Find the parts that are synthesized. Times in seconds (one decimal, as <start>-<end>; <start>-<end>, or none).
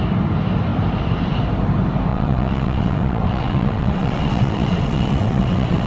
2.1-5.9